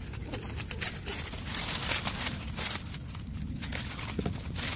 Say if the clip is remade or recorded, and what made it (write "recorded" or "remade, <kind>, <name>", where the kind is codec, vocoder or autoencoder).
recorded